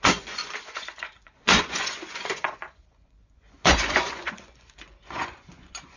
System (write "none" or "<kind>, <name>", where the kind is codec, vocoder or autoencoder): vocoder, Vocos